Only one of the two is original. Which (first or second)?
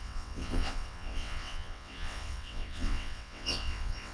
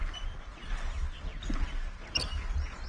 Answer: second